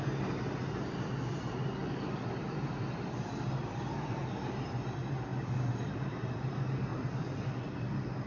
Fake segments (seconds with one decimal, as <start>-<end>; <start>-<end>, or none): 1.8-3.4; 5.3-5.9; 6.9-8.3